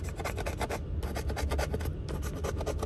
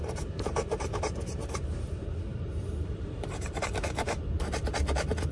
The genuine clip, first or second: first